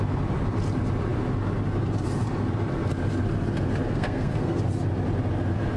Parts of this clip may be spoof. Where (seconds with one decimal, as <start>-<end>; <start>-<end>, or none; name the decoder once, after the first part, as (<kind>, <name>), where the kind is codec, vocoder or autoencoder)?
3.9-4.6 (codec, SNAC)